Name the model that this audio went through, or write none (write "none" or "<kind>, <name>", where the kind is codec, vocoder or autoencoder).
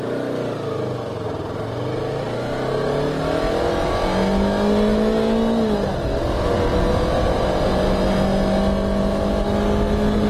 none